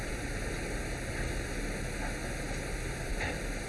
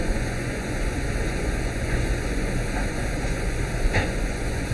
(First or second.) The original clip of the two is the first